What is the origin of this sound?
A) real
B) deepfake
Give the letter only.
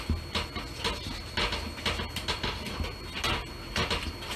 A